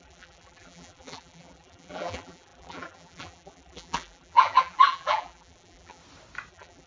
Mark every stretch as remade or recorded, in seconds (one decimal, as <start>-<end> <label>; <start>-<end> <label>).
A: 0.0-6.0 remade; 6.0-6.5 recorded; 6.5-6.9 remade